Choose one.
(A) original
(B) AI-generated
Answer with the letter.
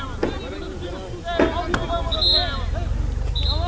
A